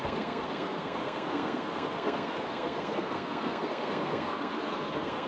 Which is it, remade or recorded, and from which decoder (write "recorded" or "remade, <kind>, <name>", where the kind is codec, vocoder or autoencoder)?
remade, codec, SNAC